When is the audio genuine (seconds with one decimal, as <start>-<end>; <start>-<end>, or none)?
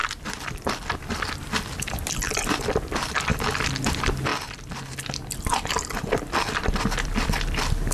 3.3-3.9; 4.3-6.4